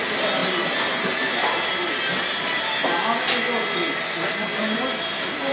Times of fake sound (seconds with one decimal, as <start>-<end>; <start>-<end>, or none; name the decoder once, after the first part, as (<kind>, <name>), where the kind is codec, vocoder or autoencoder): 0.0-2.8 (vocoder, BigVGAN v2); 4.6-5.5